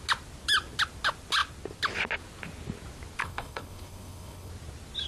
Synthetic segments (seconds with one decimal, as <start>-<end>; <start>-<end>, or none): 3.2-4.5